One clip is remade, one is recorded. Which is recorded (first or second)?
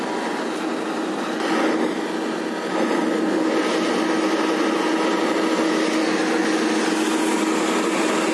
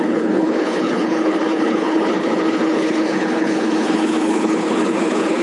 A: first